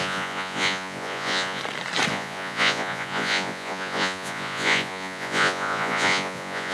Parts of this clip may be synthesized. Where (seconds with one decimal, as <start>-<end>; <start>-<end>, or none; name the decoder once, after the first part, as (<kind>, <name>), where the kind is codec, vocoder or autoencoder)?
0.0-1.6 (vocoder, Vocos); 2.1-6.7